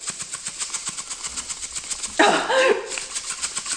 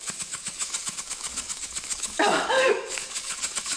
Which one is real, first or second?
first